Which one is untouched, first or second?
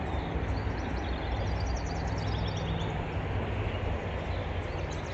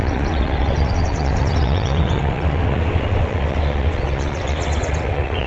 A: first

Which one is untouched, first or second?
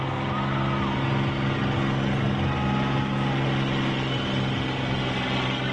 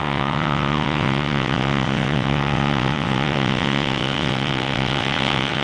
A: first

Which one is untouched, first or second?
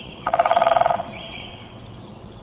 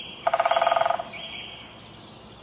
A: second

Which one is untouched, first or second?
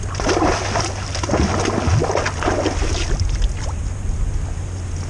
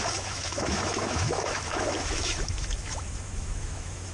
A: first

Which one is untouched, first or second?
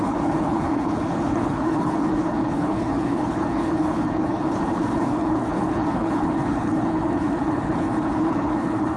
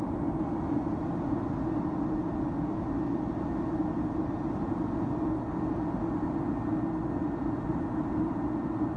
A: second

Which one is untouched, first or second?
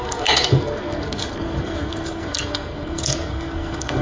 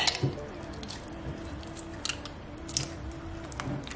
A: second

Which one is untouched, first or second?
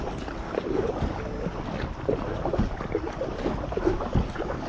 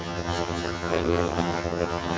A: first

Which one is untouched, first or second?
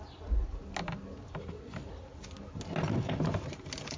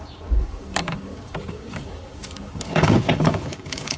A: first